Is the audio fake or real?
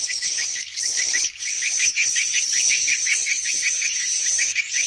fake